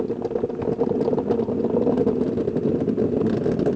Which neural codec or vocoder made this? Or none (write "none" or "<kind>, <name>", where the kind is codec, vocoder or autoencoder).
none